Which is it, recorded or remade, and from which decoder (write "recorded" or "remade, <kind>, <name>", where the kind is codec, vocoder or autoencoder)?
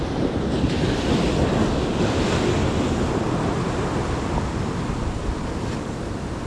recorded